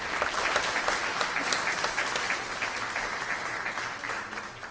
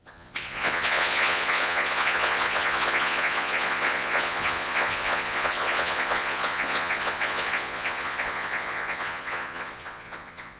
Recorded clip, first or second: first